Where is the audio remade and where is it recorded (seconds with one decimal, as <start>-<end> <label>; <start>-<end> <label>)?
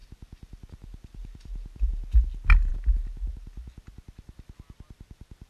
0.0-5.5 recorded